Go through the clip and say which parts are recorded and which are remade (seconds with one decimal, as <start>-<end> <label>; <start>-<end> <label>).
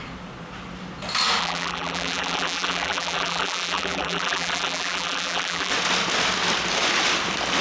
0.0-1.4 recorded; 1.4-5.7 remade; 5.7-7.6 recorded